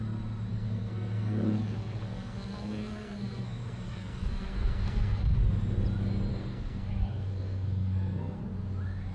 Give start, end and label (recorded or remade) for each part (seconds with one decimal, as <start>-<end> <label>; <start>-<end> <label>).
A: 0.0-0.5 recorded; 0.5-5.2 remade; 5.2-6.3 recorded; 6.3-8.4 remade; 8.4-9.1 recorded